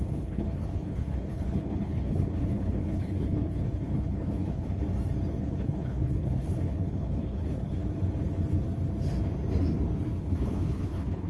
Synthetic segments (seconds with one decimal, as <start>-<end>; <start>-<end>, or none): 0.0-4.8; 5.4-7.8; 10.2-11.3